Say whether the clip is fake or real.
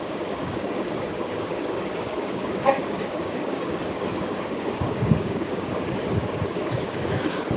fake